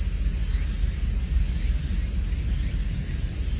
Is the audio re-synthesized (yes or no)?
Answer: no